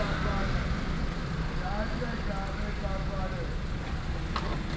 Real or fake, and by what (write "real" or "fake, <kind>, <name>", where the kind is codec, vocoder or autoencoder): real